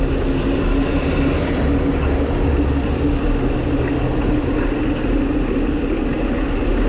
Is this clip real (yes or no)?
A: yes